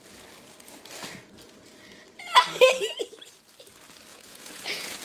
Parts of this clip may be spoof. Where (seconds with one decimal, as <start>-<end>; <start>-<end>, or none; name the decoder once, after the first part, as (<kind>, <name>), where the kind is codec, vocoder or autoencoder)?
4.1-5.0 (vocoder, Vocos)